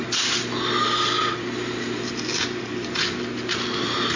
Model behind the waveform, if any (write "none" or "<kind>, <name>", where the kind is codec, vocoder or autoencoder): none